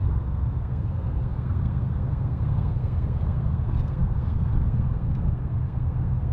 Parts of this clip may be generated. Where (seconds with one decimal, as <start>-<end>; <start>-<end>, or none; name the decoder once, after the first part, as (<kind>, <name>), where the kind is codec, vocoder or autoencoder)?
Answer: 0.0-6.3 (codec, SNAC)